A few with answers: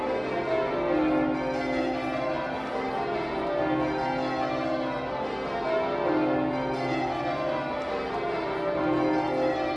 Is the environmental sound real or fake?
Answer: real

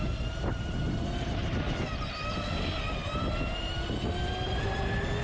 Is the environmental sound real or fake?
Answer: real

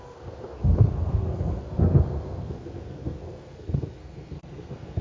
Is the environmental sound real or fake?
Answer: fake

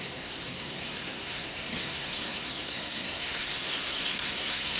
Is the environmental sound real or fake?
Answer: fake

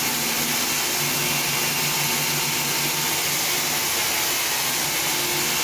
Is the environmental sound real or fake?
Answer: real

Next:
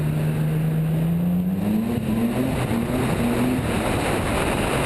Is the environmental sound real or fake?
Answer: real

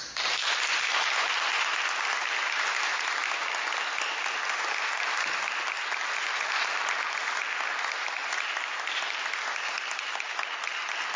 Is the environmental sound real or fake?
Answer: real